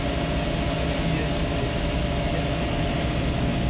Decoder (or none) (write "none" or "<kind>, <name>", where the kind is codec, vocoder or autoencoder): none